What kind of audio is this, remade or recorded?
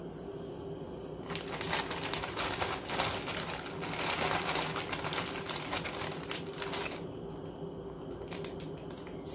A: recorded